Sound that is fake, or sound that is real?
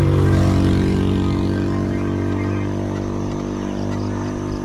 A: real